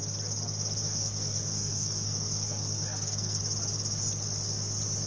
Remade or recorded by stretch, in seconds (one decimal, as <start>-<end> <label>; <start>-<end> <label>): 0.0-0.8 recorded; 0.8-3.4 remade; 3.4-5.1 recorded